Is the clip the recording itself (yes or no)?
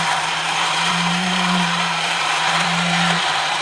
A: no